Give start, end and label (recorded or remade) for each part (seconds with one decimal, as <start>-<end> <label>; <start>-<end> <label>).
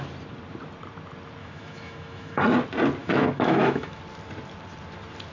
0.0-1.4 recorded; 1.4-2.4 remade; 2.4-3.0 recorded; 3.0-4.0 remade; 4.0-5.3 recorded